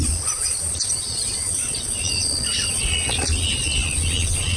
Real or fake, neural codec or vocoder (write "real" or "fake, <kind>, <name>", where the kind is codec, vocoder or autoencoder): fake, vocoder, Vocos